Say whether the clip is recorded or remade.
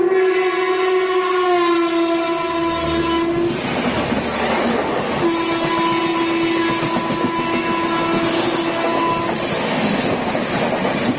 recorded